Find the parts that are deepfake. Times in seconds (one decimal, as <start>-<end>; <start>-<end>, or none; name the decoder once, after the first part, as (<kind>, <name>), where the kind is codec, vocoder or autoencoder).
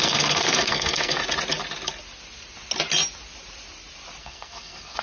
0.0-1.2 (codec, SNAC); 4.2-5.0